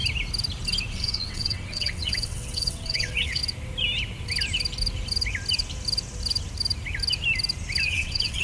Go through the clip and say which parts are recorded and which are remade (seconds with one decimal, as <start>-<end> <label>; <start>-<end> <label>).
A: 0.0-0.9 recorded; 0.9-3.4 remade; 3.4-7.8 recorded; 7.8-8.4 remade